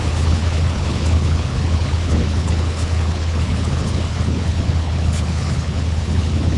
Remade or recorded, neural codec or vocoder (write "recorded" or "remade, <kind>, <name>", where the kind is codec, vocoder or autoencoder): remade, codec, HILCodec